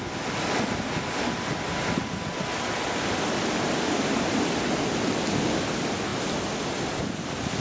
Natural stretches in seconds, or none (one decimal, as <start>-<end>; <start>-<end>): 0.0-7.6